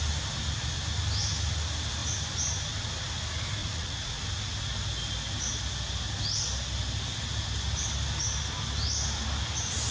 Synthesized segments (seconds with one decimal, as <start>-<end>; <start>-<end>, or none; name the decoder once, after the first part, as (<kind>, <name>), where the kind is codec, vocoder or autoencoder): 3.6-4.2 (vocoder, Vocos)